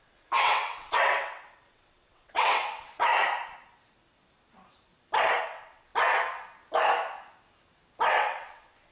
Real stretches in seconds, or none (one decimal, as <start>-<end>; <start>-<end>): 3.1-5.4; 5.9-8.1